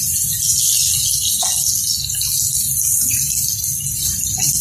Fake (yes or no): no